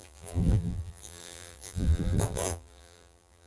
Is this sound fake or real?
fake